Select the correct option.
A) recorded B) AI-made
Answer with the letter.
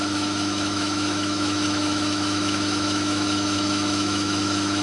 B